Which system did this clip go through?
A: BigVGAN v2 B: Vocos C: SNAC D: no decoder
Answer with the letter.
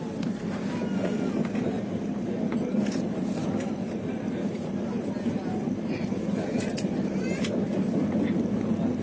D